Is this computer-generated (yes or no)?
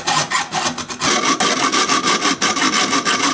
no